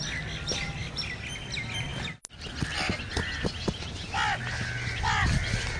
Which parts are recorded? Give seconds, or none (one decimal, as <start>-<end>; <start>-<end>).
0.0-5.8